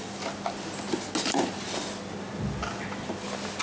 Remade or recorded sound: recorded